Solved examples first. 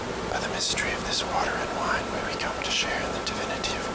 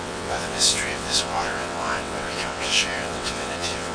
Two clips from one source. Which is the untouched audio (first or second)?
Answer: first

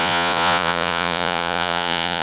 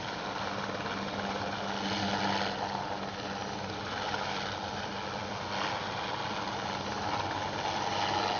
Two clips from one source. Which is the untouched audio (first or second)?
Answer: second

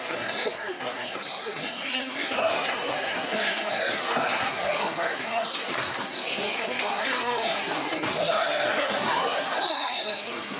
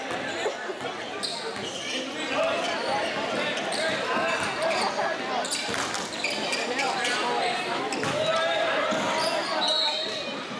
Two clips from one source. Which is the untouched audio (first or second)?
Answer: second